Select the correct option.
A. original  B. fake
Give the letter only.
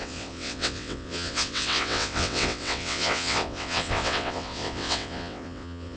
B